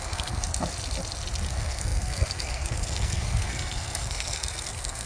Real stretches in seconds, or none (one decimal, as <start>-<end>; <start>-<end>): 0.5-1.5

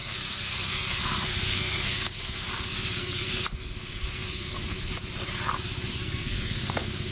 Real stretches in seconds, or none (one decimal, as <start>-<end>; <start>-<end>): 4.9-5.9

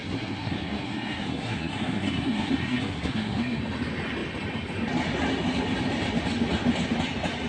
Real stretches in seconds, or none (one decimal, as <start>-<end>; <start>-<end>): 3.6-7.5

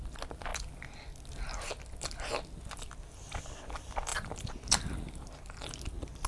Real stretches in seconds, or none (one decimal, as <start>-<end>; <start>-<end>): 0.0-6.3

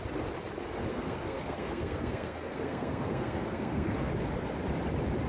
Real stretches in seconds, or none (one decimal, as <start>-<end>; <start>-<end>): 0.0-0.9; 4.1-5.3

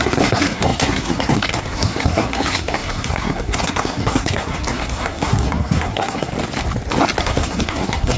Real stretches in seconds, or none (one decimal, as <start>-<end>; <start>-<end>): 6.3-7.2